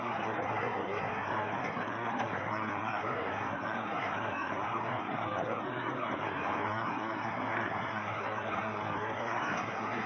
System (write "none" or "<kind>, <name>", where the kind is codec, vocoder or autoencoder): codec, SNAC